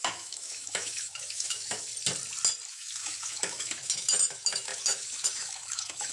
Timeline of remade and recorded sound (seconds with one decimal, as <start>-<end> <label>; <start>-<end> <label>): 0.0-1.9 remade; 1.9-2.7 recorded; 2.7-6.1 remade